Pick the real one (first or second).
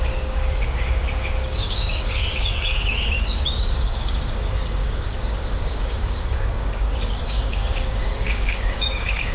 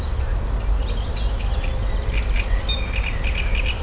second